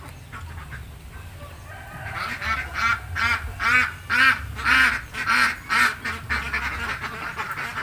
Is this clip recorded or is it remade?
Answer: recorded